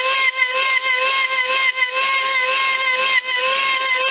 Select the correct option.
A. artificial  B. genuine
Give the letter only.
B